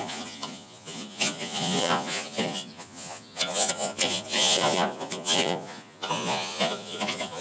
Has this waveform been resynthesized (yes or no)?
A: yes